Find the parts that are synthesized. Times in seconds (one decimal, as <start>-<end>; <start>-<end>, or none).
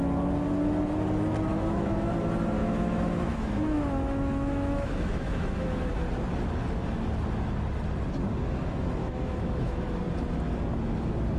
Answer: 1.5-2.1; 2.6-5.9; 9.0-10.0